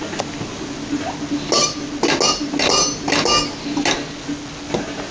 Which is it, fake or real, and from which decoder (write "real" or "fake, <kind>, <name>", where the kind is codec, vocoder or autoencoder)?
real